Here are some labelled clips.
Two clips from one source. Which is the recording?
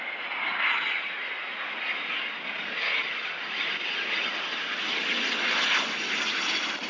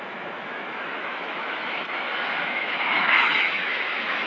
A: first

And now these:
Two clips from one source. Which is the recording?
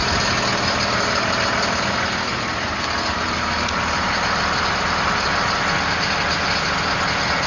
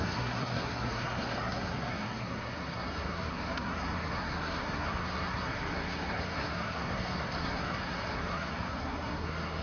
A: first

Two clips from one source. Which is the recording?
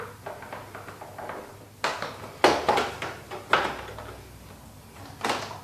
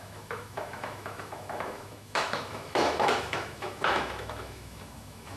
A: first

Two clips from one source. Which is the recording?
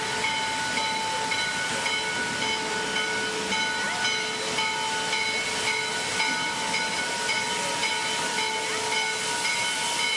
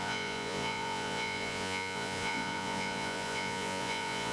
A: first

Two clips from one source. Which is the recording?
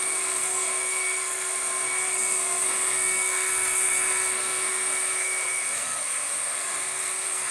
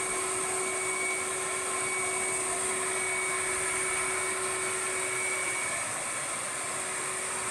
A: second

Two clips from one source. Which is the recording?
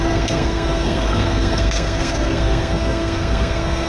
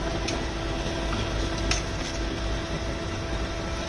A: second